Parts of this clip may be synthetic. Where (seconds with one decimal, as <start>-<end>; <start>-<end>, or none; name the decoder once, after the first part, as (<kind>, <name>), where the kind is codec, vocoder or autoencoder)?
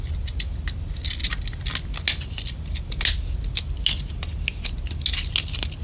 none